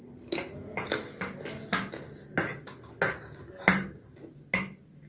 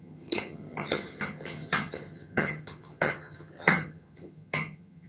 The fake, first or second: second